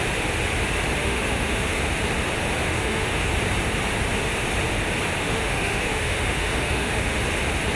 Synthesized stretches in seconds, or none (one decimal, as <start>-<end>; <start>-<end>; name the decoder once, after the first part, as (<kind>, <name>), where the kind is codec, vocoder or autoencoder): 1.0-1.8 (autoencoder, DAC-VAE); 2.6-3.3; 5.2-7.2